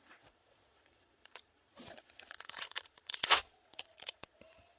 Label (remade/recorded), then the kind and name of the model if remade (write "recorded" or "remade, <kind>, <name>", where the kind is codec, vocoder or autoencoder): remade, vocoder, Vocos